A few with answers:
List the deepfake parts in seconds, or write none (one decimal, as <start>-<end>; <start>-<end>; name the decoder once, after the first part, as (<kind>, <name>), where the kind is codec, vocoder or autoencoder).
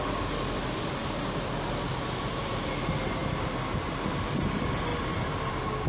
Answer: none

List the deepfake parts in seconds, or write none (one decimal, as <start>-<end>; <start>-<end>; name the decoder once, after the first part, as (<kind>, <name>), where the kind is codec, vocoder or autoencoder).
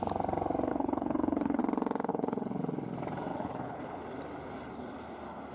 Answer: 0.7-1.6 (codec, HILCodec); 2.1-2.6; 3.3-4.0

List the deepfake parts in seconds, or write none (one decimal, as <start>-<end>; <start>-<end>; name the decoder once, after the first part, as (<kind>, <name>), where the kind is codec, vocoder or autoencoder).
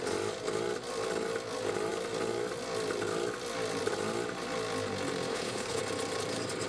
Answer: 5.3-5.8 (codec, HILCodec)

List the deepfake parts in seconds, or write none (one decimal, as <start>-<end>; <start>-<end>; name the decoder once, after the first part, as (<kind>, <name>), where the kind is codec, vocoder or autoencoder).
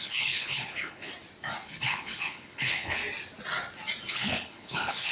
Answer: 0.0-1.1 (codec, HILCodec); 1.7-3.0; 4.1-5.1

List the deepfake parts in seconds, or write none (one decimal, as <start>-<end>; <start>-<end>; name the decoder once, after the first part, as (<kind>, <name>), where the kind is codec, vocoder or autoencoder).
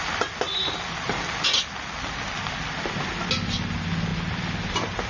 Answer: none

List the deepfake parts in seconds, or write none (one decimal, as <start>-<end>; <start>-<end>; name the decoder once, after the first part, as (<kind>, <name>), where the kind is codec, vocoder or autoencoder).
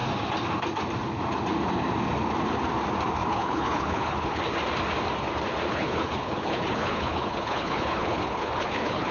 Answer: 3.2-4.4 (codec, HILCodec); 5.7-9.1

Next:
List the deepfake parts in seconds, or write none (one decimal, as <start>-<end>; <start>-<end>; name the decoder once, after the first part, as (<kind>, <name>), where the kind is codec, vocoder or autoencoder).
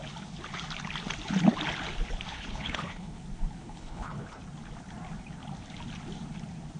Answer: 2.3-3.2 (codec, HILCodec); 3.6-4.4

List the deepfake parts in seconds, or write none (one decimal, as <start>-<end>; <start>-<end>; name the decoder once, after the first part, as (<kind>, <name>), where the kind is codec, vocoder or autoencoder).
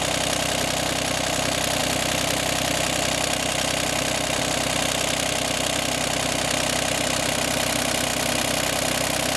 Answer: none